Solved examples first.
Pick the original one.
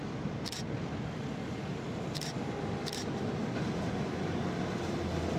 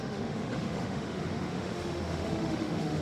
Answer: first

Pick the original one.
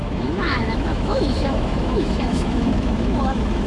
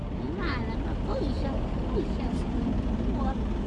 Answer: second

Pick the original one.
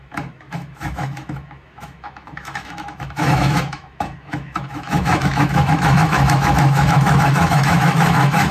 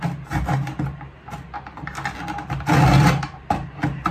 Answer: second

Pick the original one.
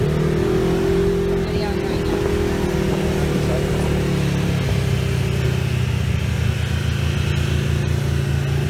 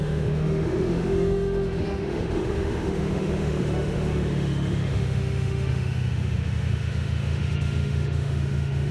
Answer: first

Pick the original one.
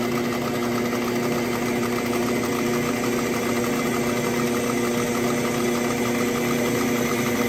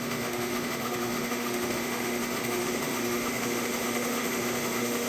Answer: first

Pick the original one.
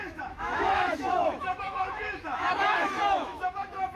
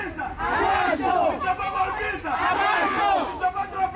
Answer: second